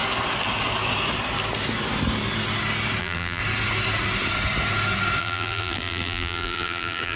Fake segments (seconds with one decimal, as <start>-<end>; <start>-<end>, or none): 3.0-3.4; 5.2-7.2